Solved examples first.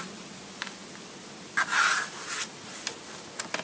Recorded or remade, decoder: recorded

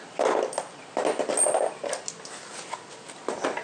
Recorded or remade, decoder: recorded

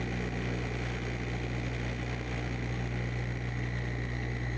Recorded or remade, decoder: recorded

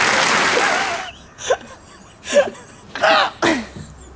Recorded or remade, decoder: recorded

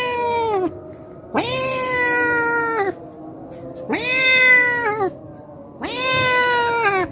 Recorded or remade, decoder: recorded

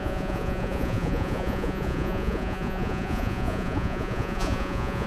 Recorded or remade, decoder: remade, vocoder, Vocos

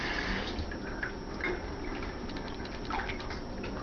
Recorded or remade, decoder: recorded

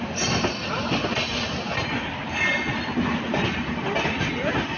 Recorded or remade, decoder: recorded